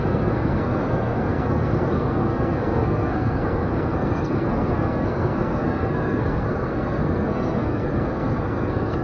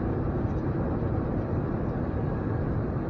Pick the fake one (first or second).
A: first